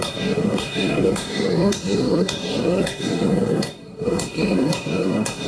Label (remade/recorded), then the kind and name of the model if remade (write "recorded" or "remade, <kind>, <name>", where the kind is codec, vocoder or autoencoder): remade, codec, SNAC